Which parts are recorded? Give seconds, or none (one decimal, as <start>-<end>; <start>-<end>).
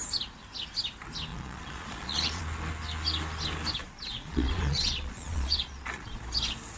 0.0-1.3; 2.4-3.8; 6.2-6.8